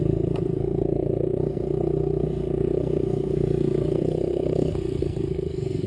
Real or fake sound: fake